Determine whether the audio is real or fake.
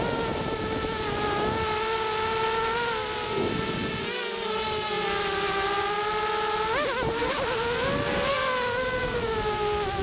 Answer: real